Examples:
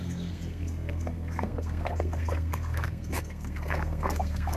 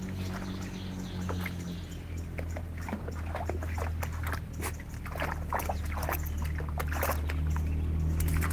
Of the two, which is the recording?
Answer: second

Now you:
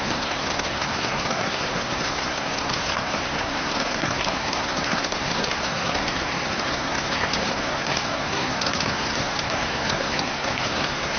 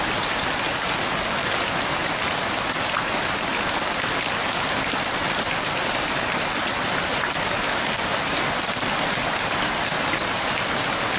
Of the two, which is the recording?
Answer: second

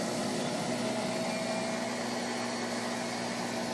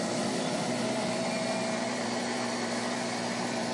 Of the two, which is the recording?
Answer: first